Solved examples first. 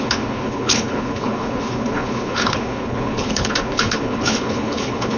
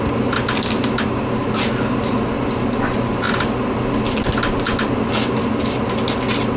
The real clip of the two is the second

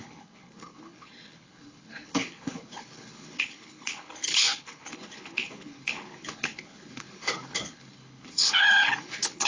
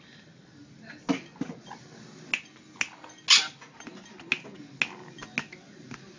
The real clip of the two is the second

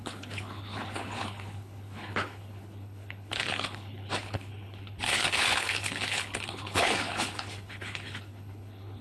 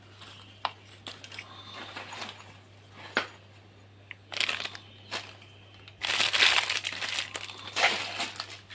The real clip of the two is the second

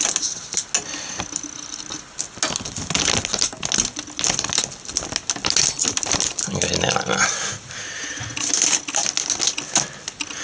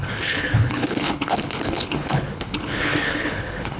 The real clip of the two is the first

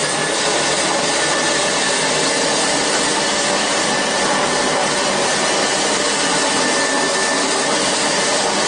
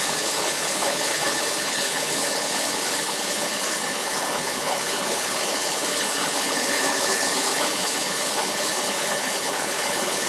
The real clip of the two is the first